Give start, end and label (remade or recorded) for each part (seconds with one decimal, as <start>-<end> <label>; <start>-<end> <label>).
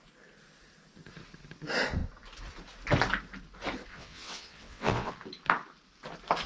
0.0-3.9 recorded; 3.9-5.1 remade; 5.1-6.5 recorded